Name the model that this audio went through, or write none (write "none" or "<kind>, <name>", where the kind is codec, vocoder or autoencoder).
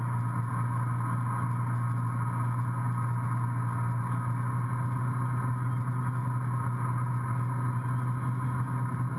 none